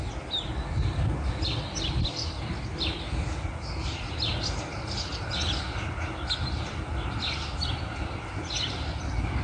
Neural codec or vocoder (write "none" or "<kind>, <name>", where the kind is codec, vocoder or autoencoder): none